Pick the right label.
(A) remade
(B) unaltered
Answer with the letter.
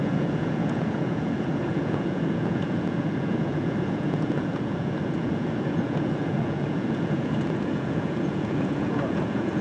A